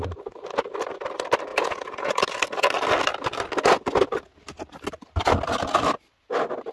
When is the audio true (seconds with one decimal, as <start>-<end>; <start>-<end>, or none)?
0.0-1.5; 2.2-6.7